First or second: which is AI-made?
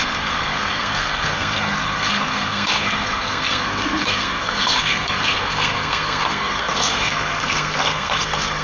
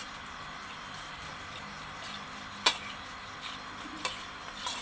first